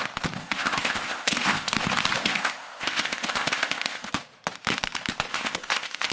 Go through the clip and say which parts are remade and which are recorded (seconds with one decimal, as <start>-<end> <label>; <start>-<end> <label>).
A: 0.0-0.4 recorded; 0.4-1.7 remade; 1.7-2.2 recorded; 2.2-4.1 remade; 4.1-5.3 recorded; 5.3-6.1 remade